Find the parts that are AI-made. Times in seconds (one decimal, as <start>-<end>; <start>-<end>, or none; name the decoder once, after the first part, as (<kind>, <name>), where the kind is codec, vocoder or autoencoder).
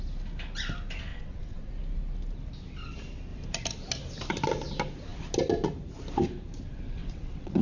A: 1.1-1.7 (vocoder, WaveNeXt); 7.0-7.6